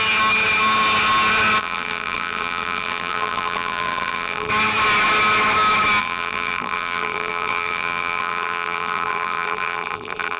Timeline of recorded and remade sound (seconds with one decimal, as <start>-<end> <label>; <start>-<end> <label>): 0.0-1.6 recorded; 1.6-4.5 remade; 4.5-6.0 recorded; 6.0-10.4 remade

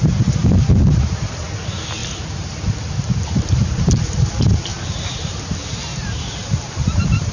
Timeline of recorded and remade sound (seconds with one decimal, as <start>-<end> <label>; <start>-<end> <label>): 0.0-0.4 recorded; 0.4-1.3 remade; 1.3-2.0 recorded; 2.0-4.3 remade; 4.3-4.7 recorded; 4.7-5.4 remade; 5.4-5.9 recorded; 5.9-7.3 remade

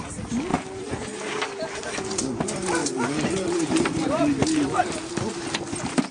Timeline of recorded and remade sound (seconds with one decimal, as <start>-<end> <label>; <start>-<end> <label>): 0.0-2.8 recorded; 2.8-4.2 remade; 4.2-6.1 recorded

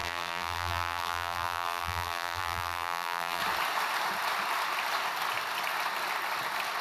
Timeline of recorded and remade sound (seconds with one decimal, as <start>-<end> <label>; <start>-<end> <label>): 0.0-3.4 remade; 3.4-6.8 recorded

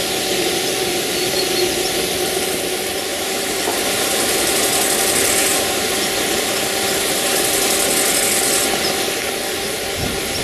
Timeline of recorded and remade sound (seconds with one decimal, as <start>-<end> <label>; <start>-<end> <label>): 0.0-3.1 recorded; 3.1-4.6 remade; 4.6-5.4 recorded; 5.4-6.1 remade; 6.1-10.4 recorded

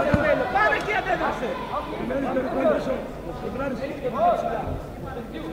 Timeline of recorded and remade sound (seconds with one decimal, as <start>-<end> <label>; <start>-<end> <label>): 0.0-1.5 recorded; 1.5-3.9 remade; 3.9-5.5 recorded

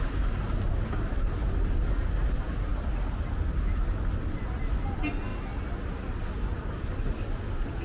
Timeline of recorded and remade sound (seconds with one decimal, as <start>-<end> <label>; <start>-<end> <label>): 0.0-7.8 recorded

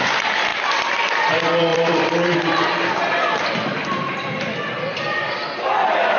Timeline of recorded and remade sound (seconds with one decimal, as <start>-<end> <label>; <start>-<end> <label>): 0.0-0.5 recorded; 0.5-1.0 remade; 1.0-1.7 recorded; 1.7-5.0 remade; 5.0-6.2 recorded